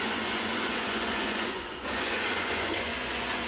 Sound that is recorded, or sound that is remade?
remade